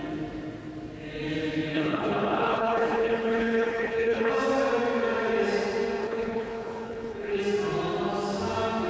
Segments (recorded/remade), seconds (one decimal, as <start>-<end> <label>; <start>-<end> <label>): 0.0-1.7 recorded; 1.7-4.3 remade; 4.3-6.0 recorded; 6.0-7.4 remade; 7.4-8.9 recorded

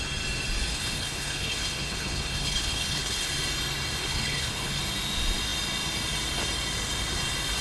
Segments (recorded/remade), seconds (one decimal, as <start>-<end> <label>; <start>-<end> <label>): 0.0-0.7 recorded; 0.7-3.3 remade; 3.3-4.0 recorded; 4.0-4.8 remade; 4.8-7.6 recorded

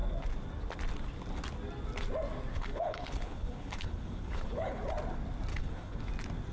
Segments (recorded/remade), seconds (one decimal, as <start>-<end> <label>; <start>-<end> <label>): 0.0-2.5 recorded; 2.5-4.8 remade; 4.8-5.5 recorded; 5.5-6.0 remade; 6.0-6.5 recorded

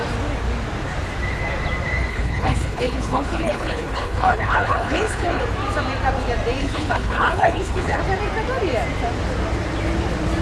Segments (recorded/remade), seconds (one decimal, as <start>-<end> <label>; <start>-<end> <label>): 0.0-2.1 recorded; 2.1-5.4 remade; 5.4-6.6 recorded; 6.6-8.0 remade; 8.0-10.4 recorded

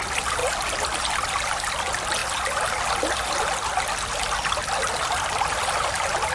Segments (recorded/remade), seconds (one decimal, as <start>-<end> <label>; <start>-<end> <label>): 0.0-6.3 recorded

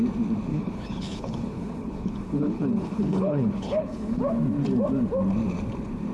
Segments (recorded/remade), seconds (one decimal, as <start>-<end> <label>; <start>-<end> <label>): 0.0-0.5 recorded; 0.5-4.2 remade; 4.2-6.1 recorded